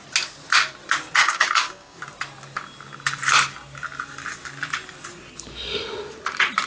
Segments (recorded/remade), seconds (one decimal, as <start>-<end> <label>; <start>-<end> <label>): 0.0-1.2 recorded; 1.2-2.0 remade; 2.0-6.7 recorded